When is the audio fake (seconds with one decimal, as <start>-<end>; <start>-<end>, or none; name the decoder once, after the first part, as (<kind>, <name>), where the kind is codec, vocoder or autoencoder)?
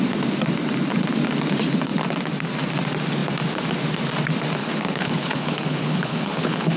4.6-6.8 (codec, HILCodec)